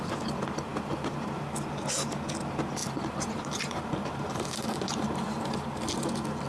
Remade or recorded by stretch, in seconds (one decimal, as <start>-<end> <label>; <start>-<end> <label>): 0.0-2.8 recorded; 2.8-5.5 remade; 5.5-6.5 recorded